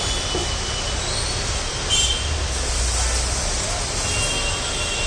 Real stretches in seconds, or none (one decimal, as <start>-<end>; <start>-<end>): 0.0-5.1

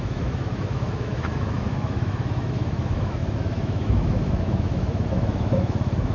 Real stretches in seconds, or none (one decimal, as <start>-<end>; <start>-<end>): none

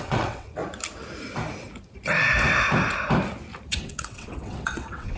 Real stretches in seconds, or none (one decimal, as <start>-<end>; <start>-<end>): 0.6-3.7

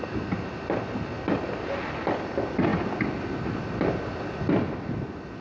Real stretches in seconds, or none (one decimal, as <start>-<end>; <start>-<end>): 0.0-5.4

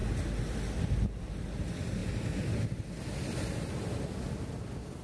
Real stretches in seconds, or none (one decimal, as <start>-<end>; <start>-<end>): 0.0-5.0

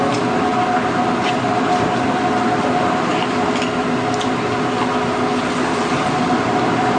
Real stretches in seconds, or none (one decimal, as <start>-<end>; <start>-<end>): 0.5-1.3; 3.1-5.9

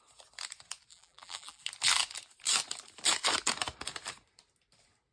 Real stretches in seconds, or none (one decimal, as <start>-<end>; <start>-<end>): 0.0-0.9; 1.6-5.1

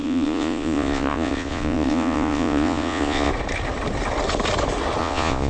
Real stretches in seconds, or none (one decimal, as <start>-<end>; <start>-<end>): 3.3-5.0